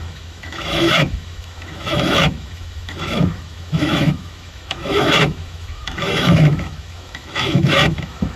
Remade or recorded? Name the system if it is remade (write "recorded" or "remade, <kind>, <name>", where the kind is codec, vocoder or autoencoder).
remade, autoencoder, DAC-VAE